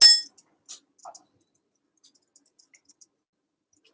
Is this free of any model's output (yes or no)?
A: yes